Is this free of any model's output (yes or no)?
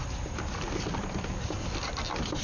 yes